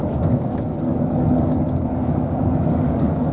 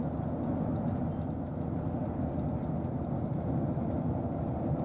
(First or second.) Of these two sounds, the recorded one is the second